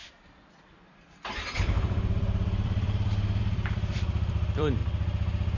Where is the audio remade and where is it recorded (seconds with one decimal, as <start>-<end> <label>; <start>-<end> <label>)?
0.0-4.8 remade; 4.8-5.6 recorded

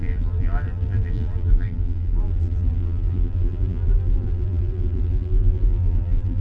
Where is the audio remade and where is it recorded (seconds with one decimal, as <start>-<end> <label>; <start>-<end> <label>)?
0.0-6.4 remade

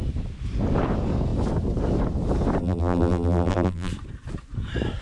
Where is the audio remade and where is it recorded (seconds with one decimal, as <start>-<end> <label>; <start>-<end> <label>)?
0.0-2.6 recorded; 2.6-3.9 remade; 3.9-5.0 recorded